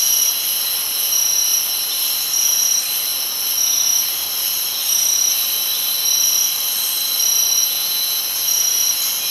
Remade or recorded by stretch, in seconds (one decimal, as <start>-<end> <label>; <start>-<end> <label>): 0.0-7.6 recorded; 7.6-8.2 remade; 8.2-9.3 recorded